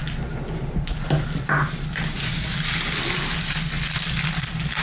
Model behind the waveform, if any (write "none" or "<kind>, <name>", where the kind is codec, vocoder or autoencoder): none